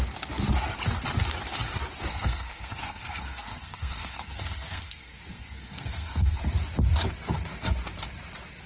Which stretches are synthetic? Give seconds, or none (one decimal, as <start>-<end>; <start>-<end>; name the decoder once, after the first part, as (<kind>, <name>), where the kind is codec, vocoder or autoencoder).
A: 2.1-6.4 (codec, SNAC)